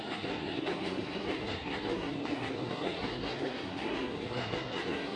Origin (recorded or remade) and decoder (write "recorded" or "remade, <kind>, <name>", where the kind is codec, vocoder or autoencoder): remade, codec, SNAC